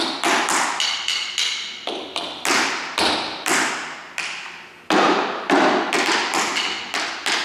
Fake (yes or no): no